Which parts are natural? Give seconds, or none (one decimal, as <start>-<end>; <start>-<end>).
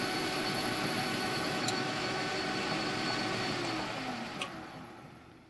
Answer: 0.0-1.1; 2.3-5.5